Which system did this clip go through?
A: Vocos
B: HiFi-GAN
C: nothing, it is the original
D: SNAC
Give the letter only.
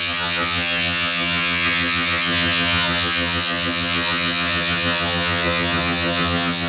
B